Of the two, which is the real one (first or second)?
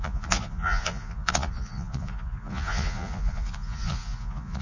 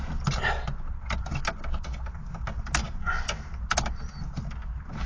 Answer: second